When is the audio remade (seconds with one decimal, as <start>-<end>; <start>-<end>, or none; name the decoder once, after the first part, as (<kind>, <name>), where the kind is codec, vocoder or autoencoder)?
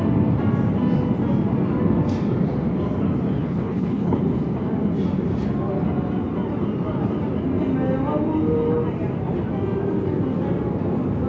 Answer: 3.3-4.2 (codec, HILCodec)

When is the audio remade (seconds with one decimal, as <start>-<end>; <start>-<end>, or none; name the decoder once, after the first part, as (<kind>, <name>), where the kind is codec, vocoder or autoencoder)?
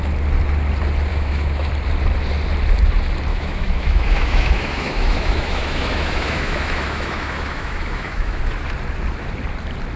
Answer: 1.1-1.7 (autoencoder, DAC-VAE); 3.3-8.4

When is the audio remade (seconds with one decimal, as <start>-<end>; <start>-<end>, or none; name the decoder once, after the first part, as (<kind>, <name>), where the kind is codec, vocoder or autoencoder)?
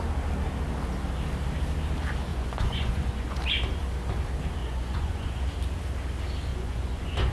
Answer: 2.3-3.4 (vocoder, Vocos); 4.6-5.4; 6.5-7.3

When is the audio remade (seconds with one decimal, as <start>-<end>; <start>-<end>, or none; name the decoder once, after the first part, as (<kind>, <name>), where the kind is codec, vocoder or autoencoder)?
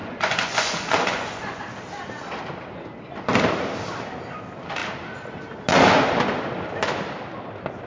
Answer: 0.0-1.6 (vocoder, Vocos)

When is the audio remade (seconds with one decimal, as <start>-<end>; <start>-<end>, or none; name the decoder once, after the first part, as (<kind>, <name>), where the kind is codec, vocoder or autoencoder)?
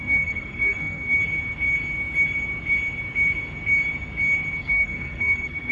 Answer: 0.0-1.2 (codec, SNAC); 4.6-5.7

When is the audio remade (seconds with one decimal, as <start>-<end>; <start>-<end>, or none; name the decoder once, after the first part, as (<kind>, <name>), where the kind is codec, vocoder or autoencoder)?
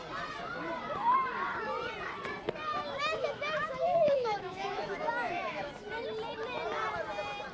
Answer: 2.7-5.7 (autoencoder, DAC-VAE)